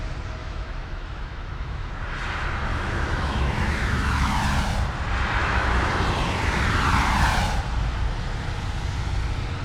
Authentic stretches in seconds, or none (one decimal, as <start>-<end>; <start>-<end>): 0.0-0.4; 1.9-2.7; 4.4-5.4; 5.9-9.6